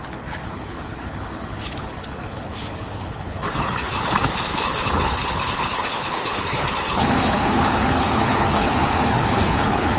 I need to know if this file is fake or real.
fake